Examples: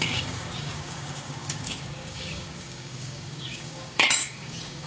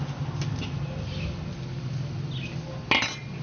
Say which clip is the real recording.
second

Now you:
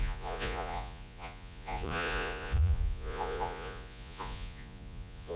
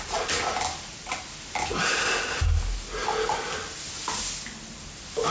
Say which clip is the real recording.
second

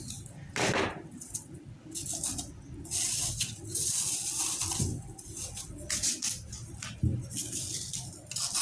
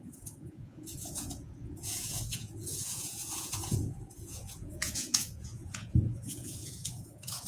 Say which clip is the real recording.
first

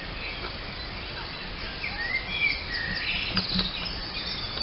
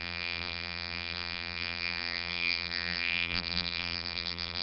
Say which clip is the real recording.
first